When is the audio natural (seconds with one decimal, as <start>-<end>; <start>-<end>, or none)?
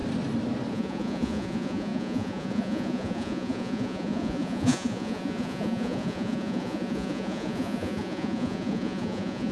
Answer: 0.0-0.7